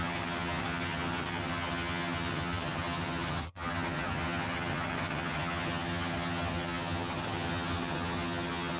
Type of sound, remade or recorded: remade